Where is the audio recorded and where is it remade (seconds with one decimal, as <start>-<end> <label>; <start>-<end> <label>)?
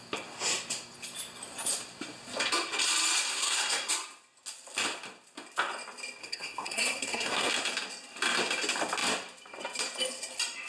0.0-3.3 recorded; 3.3-3.9 remade; 3.9-6.2 recorded; 6.2-7.5 remade; 7.5-10.7 recorded